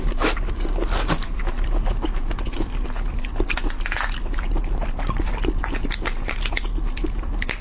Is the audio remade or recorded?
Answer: remade